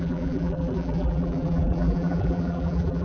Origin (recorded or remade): remade